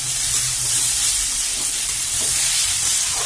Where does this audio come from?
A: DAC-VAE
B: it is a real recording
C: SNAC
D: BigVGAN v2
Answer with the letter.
B